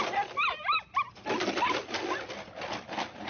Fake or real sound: real